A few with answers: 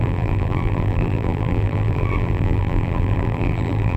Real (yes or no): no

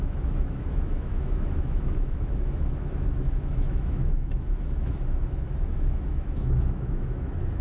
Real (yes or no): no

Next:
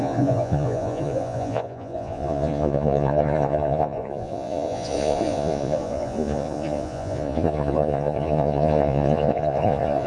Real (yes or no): no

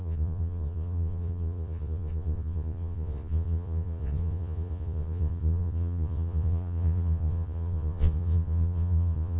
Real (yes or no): no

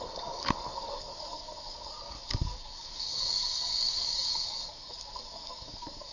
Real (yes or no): no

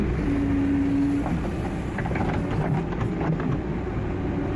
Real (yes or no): yes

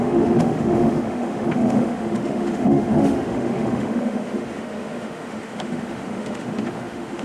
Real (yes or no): no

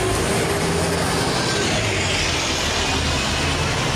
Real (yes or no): yes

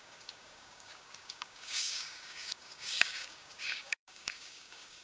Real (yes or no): no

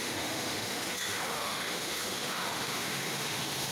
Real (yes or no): no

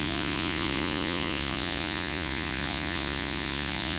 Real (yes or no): no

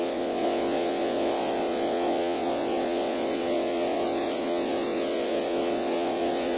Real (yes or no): no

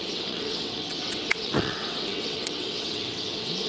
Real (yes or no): no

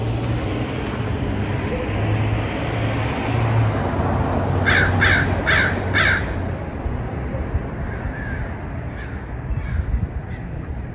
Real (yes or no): yes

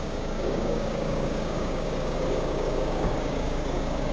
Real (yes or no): no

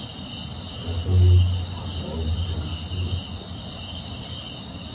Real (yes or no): yes